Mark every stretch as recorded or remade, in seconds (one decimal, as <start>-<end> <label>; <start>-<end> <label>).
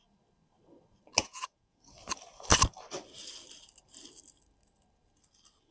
0.0-1.2 recorded; 1.2-1.8 remade; 1.8-5.7 recorded